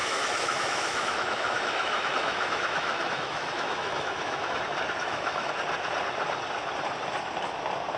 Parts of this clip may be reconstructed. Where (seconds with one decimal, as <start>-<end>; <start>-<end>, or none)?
0.0-4.6; 5.0-5.5